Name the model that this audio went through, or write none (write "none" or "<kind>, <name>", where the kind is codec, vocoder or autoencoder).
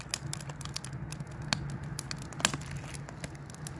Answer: none